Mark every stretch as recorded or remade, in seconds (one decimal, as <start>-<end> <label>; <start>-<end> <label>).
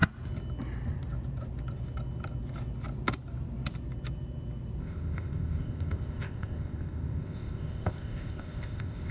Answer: 0.0-4.8 recorded; 4.8-9.1 remade